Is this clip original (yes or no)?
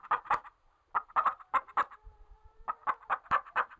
no